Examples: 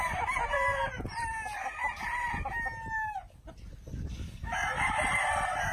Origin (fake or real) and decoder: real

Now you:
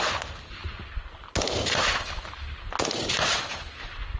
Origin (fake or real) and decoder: real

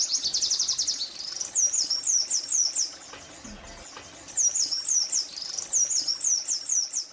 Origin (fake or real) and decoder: real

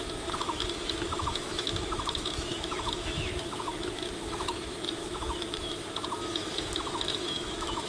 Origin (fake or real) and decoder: fake, autoencoder, DAC-VAE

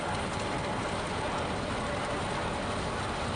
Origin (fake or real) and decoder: real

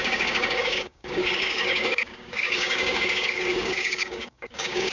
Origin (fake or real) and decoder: fake, codec, DAC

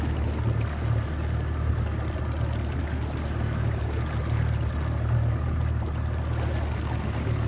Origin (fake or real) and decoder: real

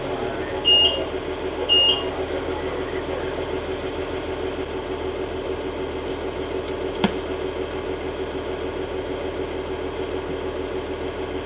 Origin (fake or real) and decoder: real